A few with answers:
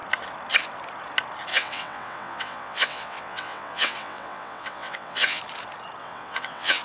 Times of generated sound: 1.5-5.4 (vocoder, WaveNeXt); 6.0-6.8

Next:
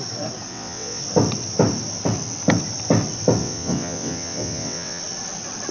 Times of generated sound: 0.5-1.0 (vocoder, WaveNeXt); 3.4-5.0

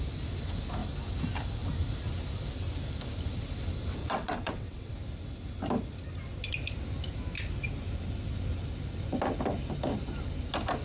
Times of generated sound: 4.0-4.9 (vocoder, WaveNeXt)

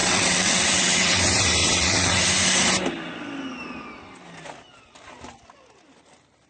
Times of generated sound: 0.0-1.2 (vocoder, WaveNeXt); 1.6-2.2